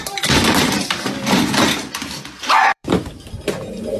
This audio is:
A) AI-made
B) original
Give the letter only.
A